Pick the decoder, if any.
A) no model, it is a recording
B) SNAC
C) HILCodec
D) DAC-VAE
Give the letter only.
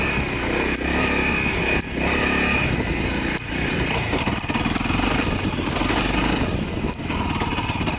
A